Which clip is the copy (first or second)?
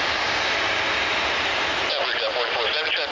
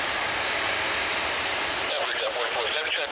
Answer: second